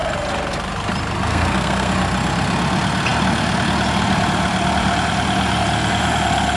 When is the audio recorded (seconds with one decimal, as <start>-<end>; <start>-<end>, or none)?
0.0-1.3; 1.9-6.6